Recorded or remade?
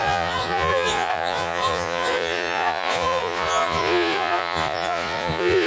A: remade